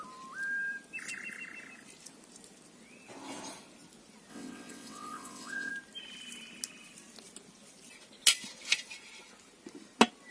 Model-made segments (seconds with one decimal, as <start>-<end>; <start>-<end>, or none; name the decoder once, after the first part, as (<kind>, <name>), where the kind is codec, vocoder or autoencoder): 4.3-5.7 (vocoder, WaveNeXt)